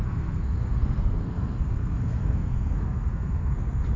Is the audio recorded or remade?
remade